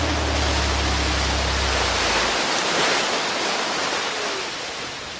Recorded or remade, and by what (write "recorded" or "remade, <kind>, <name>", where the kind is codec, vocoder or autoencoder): recorded